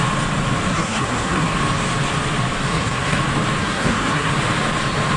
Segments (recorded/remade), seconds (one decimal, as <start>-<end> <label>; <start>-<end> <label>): 0.0-0.7 recorded; 0.7-1.6 remade; 1.6-2.7 recorded; 2.7-3.2 remade; 3.2-3.6 recorded; 3.6-4.3 remade; 4.3-5.2 recorded